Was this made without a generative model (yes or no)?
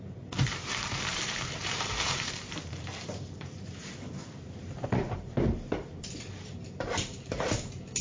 no